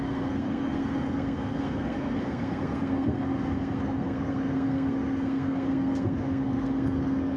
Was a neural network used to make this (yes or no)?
yes